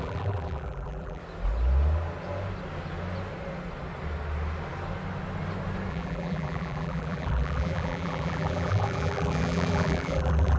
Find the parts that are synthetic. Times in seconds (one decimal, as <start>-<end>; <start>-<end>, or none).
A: 0.0-1.2; 5.9-10.6